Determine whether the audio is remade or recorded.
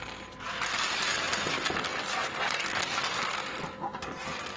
recorded